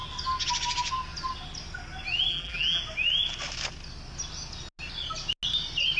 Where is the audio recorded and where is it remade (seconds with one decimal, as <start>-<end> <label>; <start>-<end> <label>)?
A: 0.0-2.3 recorded; 2.3-2.8 remade; 2.8-6.0 recorded